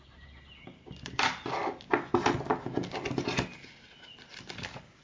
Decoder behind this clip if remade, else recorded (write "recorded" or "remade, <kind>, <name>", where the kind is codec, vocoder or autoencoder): recorded